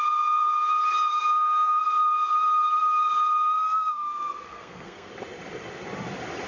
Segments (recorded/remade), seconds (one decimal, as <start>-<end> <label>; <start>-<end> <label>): 0.0-1.1 recorded; 1.1-1.8 remade; 1.8-3.6 recorded; 3.6-5.1 remade; 5.1-6.5 recorded

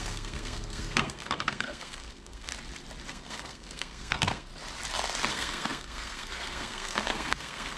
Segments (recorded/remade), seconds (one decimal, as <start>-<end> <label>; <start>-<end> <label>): 0.0-2.5 remade; 2.5-3.1 recorded; 3.1-4.5 remade; 4.5-5.3 recorded; 5.3-7.8 remade

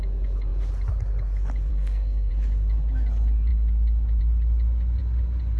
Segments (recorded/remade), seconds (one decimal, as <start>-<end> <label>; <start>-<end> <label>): 0.0-1.7 recorded; 1.7-2.3 remade; 2.3-5.6 recorded

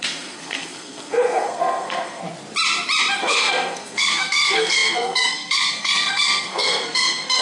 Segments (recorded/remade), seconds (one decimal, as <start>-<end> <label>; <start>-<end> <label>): 0.0-2.2 remade; 2.2-3.2 recorded; 3.2-7.4 remade